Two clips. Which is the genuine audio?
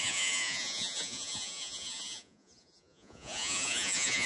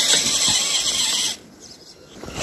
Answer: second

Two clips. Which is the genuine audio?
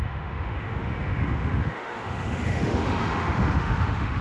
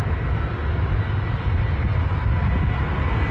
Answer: second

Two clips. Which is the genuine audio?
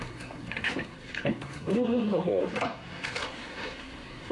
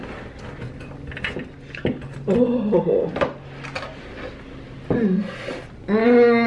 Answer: second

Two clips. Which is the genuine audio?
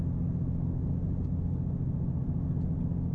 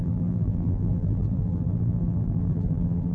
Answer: first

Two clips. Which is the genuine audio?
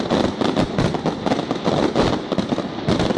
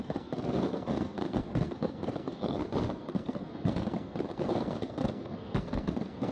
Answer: first